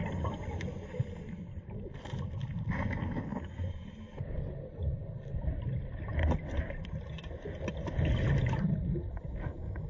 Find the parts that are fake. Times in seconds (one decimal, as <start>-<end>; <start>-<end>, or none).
none